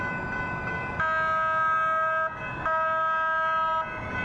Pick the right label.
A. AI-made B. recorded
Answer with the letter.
B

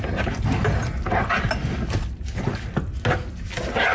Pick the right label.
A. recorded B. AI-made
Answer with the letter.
A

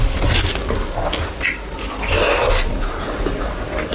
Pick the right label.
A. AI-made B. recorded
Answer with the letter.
B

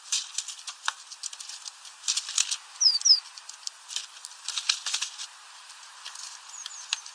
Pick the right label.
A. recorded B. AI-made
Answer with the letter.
A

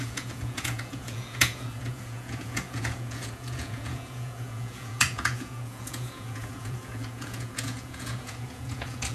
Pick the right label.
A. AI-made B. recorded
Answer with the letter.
A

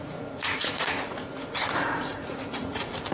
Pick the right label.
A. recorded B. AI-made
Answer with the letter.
B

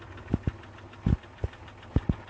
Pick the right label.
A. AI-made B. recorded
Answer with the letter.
B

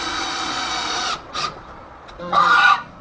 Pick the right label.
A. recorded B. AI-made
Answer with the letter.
B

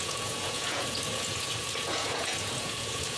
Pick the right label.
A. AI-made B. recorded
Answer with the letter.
A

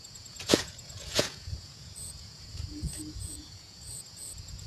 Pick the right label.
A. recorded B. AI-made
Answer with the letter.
B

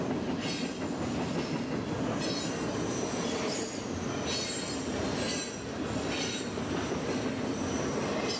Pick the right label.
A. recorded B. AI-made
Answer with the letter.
A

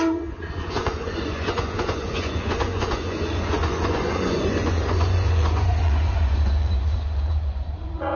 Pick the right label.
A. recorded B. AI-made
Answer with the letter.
B